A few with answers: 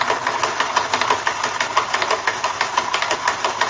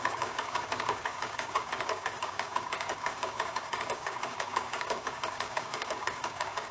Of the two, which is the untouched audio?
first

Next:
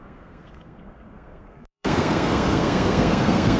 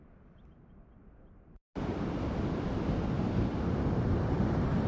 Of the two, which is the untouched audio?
second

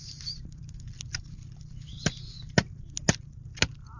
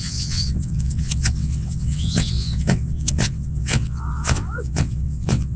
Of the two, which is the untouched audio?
first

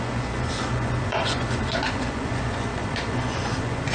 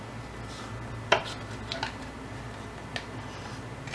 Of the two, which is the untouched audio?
second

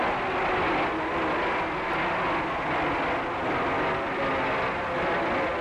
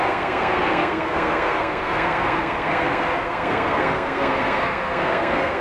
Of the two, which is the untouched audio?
first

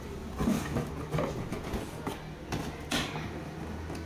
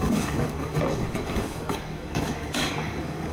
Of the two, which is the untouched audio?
first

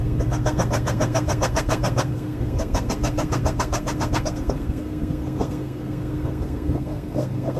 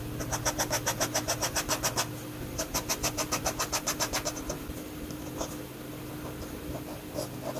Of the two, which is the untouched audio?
second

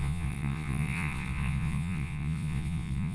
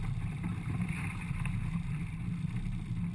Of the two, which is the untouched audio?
second